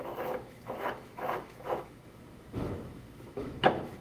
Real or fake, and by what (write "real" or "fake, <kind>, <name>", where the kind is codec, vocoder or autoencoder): fake, autoencoder, DAC-VAE